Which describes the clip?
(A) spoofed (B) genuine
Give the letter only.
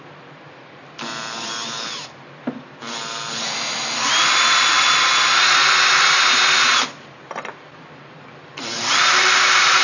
A